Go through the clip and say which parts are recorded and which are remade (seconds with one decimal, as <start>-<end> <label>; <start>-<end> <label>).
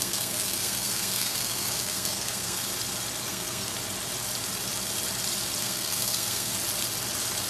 0.0-2.7 remade; 2.7-3.3 recorded; 3.3-3.7 remade; 3.7-5.6 recorded; 5.6-6.5 remade; 6.5-7.5 recorded